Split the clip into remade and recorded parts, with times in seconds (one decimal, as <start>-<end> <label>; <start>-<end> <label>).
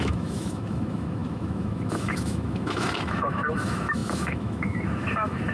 0.0-5.5 remade